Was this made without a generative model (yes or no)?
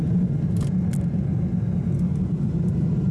yes